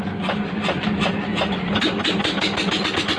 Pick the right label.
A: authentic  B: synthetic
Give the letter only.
A